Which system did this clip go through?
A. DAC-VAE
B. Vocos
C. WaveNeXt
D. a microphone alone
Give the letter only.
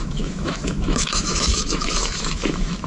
A